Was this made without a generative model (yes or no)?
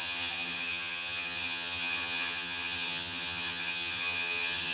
no